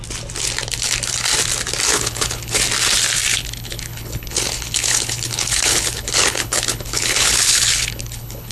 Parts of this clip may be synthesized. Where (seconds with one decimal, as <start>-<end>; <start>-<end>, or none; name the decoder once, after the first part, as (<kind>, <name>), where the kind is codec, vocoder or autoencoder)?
1.9-2.6 (codec, HILCodec); 3.3-8.5